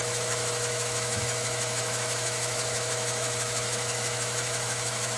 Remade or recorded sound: remade